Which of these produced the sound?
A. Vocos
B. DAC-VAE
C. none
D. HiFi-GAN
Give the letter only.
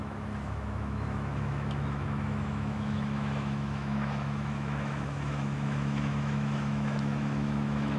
B